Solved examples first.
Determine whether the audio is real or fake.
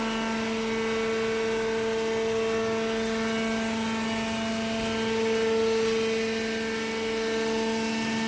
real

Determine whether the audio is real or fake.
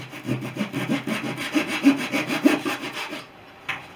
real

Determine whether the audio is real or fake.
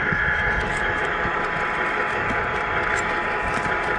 real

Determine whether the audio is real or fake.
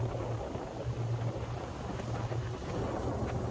real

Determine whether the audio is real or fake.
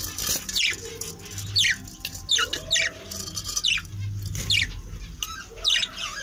real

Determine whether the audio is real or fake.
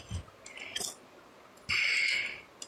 real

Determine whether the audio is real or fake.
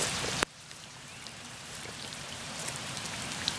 fake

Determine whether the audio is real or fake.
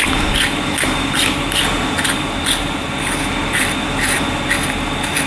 real